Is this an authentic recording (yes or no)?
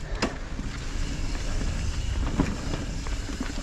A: yes